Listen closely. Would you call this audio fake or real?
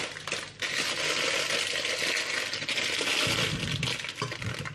real